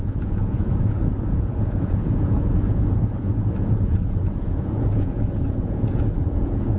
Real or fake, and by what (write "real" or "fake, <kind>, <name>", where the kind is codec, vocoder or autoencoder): fake, vocoder, Vocos